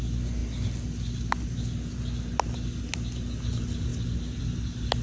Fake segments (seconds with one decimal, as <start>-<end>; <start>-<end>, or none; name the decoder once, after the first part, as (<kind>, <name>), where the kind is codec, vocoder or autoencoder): none